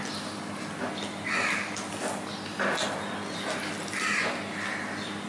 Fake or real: real